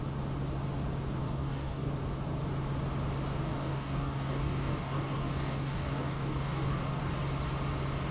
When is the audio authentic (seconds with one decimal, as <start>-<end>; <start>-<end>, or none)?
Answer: 0.0-1.2; 1.9-3.5; 7.1-8.1